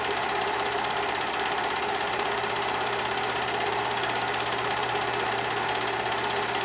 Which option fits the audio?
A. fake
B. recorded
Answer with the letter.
A